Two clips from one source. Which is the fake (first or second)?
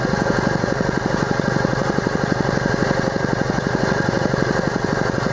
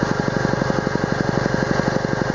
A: first